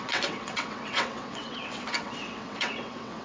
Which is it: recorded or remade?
remade